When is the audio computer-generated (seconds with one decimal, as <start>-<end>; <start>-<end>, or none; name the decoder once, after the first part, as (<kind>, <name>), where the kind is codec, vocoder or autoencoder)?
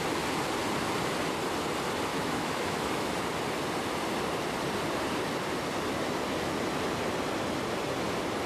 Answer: 2.1-3.1 (autoencoder, DAC-VAE)